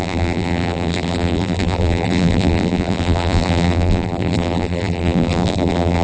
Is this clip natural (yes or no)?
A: no